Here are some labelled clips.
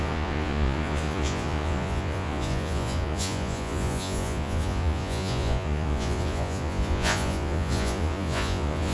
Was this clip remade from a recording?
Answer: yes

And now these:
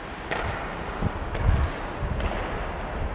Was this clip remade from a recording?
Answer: no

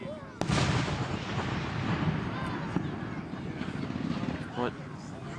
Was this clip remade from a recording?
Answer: no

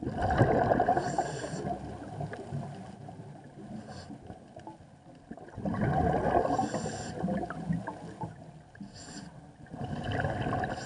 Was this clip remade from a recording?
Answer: no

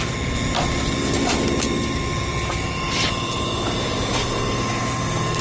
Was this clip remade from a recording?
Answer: no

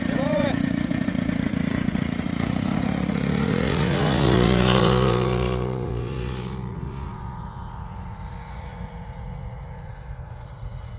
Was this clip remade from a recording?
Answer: yes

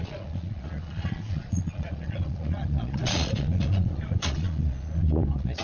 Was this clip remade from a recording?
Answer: yes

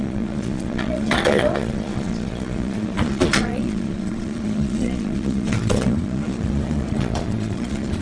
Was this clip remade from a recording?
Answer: yes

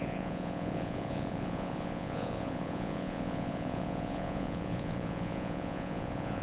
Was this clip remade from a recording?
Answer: yes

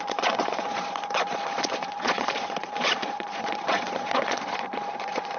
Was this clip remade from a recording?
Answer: yes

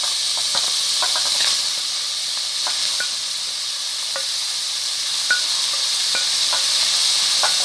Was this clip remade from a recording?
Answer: no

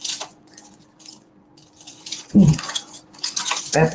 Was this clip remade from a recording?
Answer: yes